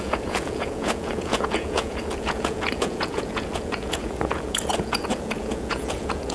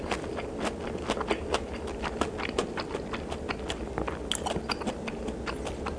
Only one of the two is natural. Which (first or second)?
second